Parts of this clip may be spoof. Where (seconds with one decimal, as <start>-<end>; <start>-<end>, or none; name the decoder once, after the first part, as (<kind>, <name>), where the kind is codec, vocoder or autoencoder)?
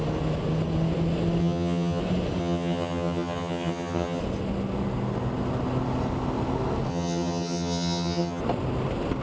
1.4-2.0 (vocoder, HiFi-GAN); 2.4-4.2; 6.9-8.4